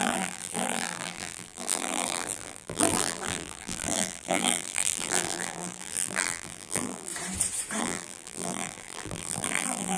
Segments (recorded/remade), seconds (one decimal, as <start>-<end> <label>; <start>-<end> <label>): 0.0-7.1 remade; 7.1-7.8 recorded; 7.8-10.0 remade